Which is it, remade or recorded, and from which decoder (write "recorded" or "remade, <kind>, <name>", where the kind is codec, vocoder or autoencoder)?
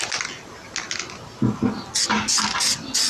recorded